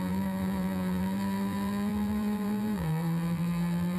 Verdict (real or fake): fake